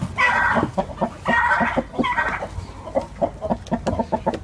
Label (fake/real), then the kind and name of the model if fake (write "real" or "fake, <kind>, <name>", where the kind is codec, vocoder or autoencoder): real